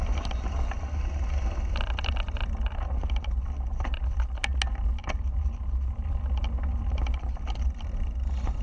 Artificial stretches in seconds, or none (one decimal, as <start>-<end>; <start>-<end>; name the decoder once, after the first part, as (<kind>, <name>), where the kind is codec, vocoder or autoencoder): none